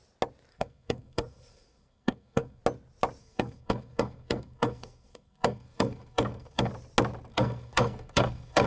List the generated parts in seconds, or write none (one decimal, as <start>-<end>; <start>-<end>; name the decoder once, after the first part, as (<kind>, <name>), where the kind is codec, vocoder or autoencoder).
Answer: 0.5-2.6 (codec, SNAC); 3.2-6.7; 7.3-8.7